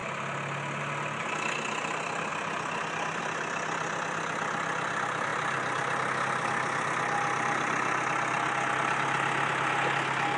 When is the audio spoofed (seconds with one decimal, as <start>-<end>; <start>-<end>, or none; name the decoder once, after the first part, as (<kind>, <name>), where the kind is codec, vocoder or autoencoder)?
none